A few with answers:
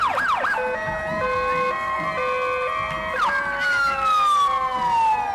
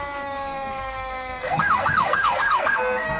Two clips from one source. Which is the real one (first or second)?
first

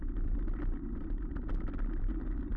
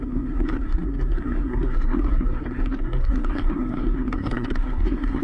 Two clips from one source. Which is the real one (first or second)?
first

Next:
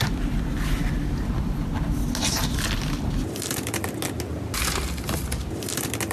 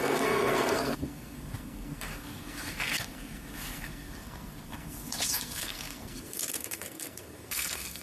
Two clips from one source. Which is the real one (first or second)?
first